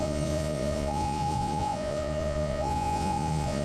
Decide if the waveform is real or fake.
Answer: fake